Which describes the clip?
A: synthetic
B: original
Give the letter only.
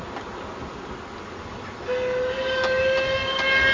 B